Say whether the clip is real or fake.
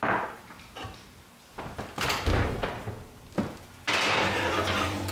real